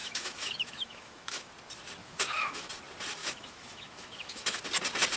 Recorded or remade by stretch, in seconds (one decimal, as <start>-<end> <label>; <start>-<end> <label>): 0.0-1.5 remade; 1.5-2.0 recorded; 2.0-2.7 remade; 2.7-3.2 recorded; 3.2-4.6 remade; 4.6-5.2 recorded